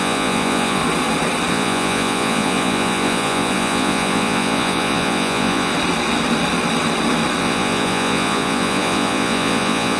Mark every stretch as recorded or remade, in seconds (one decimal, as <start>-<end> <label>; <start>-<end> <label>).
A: 0.0-0.8 remade; 0.8-1.5 recorded; 1.5-5.7 remade; 5.7-7.4 recorded; 7.4-10.0 remade